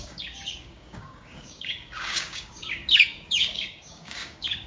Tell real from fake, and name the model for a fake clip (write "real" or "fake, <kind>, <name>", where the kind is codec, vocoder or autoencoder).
fake, codec, DAC